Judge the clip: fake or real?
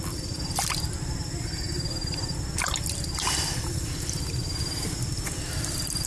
real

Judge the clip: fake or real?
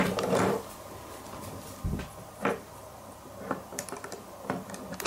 real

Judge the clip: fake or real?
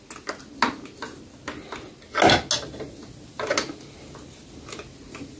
real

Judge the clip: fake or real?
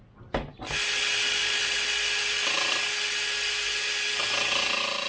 real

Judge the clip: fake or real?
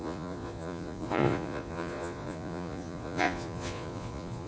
fake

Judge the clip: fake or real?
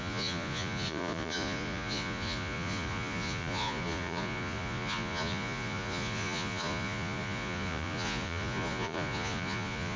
fake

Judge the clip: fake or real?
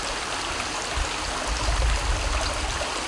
real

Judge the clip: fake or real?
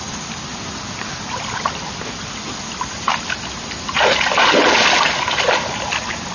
real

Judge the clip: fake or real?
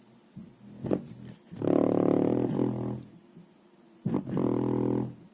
real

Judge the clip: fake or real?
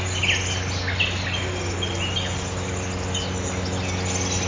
real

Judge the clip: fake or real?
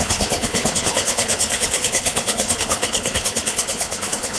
fake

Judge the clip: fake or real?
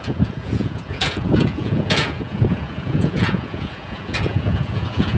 fake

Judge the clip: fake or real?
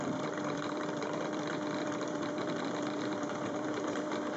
fake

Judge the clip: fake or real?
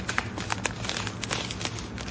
real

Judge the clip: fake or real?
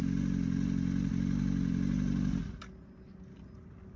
real